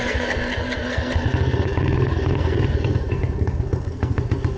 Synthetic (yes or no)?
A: yes